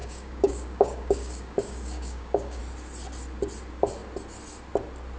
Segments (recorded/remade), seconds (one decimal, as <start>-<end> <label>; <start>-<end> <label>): 0.0-2.6 remade; 2.6-5.2 recorded